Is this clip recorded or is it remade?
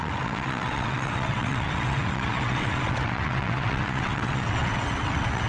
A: remade